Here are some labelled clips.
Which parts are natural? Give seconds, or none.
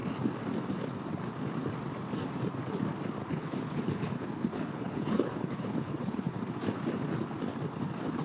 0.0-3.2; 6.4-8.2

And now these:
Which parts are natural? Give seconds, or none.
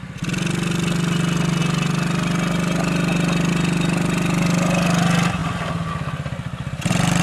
0.0-7.2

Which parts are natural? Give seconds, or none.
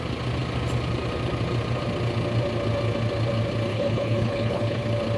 0.0-3.7; 4.8-5.2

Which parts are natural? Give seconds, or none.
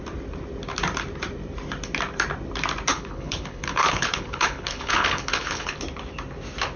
0.0-2.9; 5.8-6.8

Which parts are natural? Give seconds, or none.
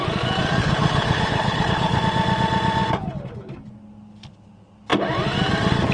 0.0-0.6; 2.0-5.9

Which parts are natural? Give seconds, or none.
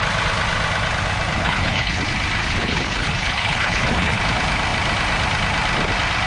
0.0-1.4; 2.0-2.4; 4.2-6.3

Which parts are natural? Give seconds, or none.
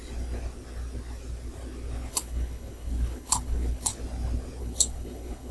0.0-2.1; 3.9-4.6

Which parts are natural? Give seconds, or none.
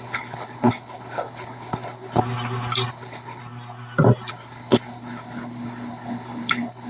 2.2-2.9; 3.4-4.3